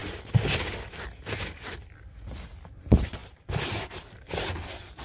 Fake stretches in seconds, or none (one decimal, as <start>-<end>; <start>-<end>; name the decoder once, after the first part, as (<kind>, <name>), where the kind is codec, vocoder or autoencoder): none